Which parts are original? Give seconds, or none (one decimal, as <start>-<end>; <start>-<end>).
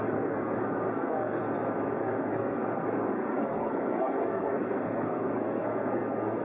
1.4-2.0